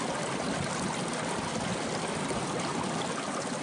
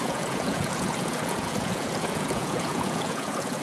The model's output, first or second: second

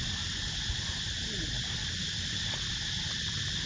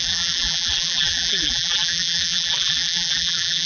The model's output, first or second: second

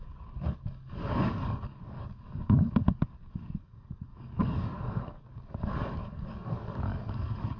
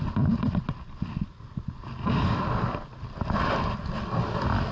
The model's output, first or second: first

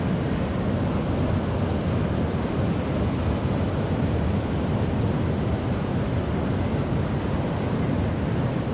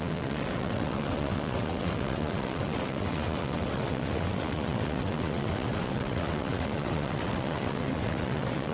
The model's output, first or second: second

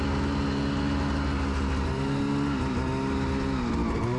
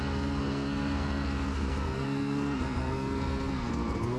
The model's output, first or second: second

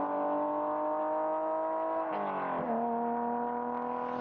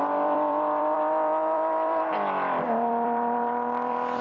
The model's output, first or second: second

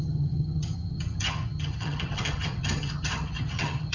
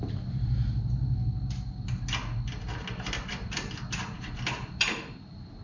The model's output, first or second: first